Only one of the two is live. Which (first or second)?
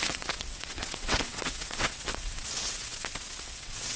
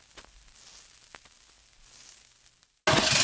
second